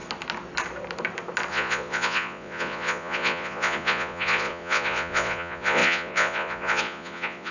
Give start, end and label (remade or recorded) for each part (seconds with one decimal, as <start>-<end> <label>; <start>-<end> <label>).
0.0-1.5 recorded; 1.5-7.5 remade